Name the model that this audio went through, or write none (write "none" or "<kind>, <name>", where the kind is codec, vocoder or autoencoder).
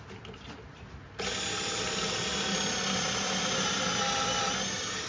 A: none